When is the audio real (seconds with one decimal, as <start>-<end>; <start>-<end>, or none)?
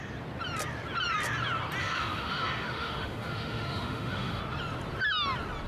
0.0-1.8; 4.4-5.7